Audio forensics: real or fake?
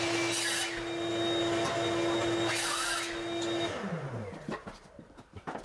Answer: real